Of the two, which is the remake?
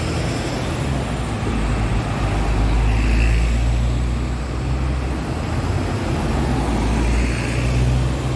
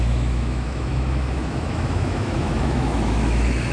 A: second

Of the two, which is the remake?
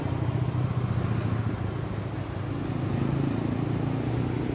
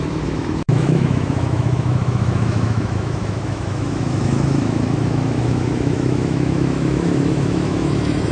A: second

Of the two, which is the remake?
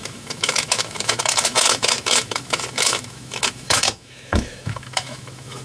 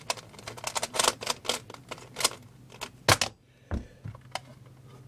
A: first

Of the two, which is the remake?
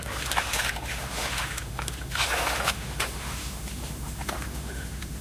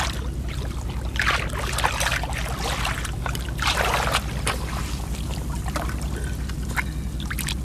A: first